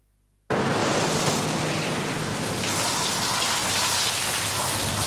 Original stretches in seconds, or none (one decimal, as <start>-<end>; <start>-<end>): 0.0-0.8; 3.1-5.1